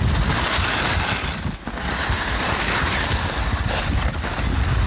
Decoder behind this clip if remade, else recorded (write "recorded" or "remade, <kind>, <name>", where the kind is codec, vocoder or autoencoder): recorded